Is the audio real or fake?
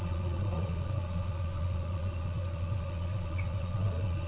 fake